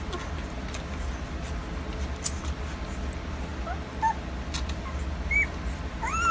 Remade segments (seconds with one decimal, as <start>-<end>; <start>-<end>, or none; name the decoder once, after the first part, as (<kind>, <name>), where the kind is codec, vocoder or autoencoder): none